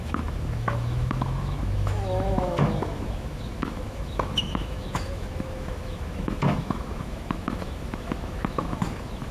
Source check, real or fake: fake